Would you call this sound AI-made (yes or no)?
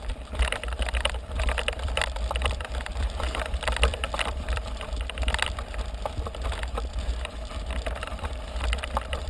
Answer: yes